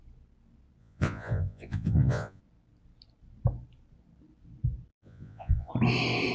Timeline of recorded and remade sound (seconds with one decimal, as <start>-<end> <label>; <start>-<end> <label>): 0.0-0.8 recorded; 0.8-2.4 remade; 2.4-4.9 recorded; 4.9-5.7 remade; 5.7-6.3 recorded